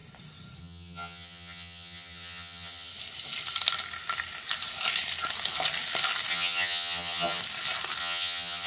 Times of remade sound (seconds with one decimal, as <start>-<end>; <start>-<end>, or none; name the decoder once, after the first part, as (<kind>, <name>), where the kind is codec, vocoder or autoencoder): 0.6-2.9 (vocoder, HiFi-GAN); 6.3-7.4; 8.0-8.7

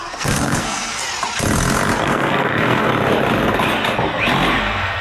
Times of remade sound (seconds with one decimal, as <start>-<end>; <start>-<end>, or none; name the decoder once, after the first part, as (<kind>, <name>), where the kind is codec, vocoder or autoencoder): 0.0-1.0 (codec, SNAC); 2.0-2.9; 4.6-5.0

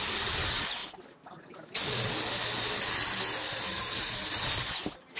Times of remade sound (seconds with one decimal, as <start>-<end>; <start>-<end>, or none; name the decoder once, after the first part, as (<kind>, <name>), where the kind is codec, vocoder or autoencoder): 3.8-4.6 (vocoder, BigVGAN v2)